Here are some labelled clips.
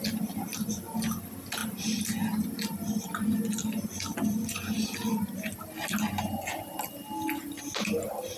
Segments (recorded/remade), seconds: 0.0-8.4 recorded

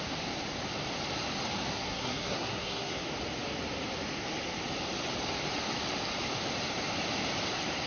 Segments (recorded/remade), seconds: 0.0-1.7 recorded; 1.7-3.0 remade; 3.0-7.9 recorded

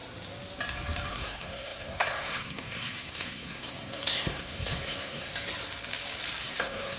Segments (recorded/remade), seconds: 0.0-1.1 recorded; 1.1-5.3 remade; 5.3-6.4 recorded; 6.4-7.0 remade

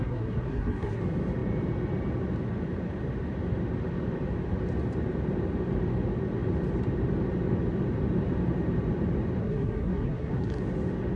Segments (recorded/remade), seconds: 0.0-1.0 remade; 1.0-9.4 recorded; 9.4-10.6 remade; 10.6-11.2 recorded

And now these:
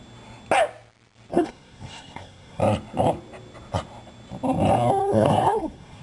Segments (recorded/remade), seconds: 0.0-1.3 recorded; 1.3-2.6 remade; 2.6-5.0 recorded; 5.0-6.0 remade

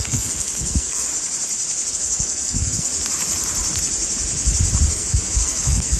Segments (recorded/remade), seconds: 0.0-1.1 remade; 1.1-1.9 recorded; 1.9-2.9 remade; 2.9-4.9 recorded; 4.9-6.0 remade

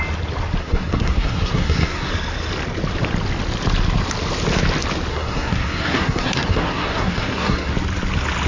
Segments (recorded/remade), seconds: 0.0-0.6 recorded; 0.6-2.1 remade; 2.1-5.1 recorded; 5.1-7.7 remade; 7.7-8.5 recorded